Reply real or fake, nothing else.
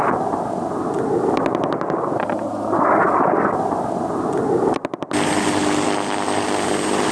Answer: real